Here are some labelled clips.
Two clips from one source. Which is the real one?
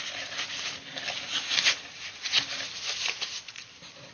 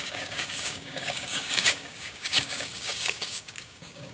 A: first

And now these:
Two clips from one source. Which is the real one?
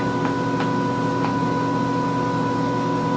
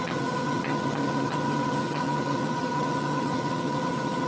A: first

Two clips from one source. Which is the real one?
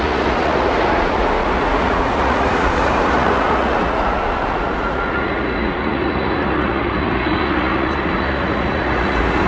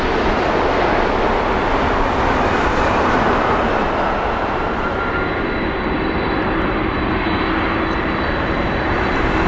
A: second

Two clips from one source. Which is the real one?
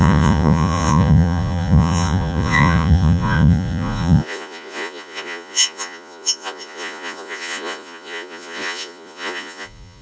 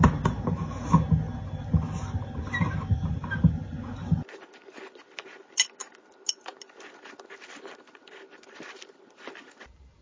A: second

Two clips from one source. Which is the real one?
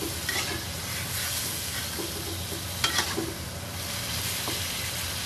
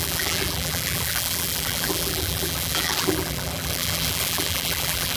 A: first